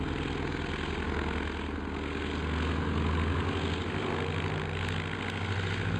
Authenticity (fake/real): real